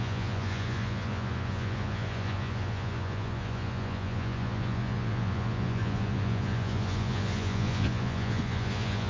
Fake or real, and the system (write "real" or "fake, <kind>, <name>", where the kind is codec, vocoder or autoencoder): fake, vocoder, Vocos